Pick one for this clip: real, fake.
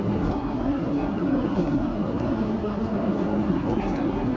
fake